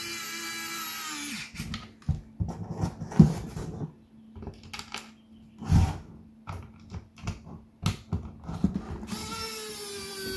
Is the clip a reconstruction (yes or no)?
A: no